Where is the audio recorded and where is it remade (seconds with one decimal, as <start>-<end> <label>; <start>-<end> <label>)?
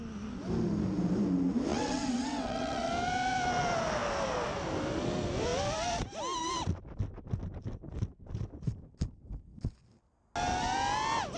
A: 0.0-1.7 recorded; 1.7-2.9 remade; 2.9-11.4 recorded